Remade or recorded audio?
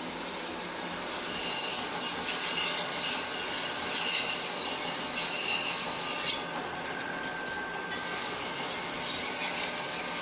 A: recorded